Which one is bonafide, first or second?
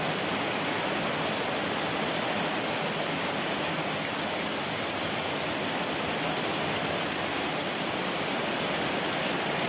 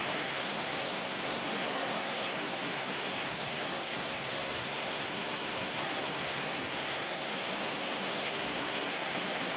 first